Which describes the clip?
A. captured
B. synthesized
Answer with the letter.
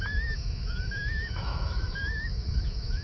B